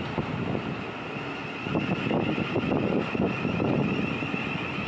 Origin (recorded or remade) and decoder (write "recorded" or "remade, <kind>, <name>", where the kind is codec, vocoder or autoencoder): recorded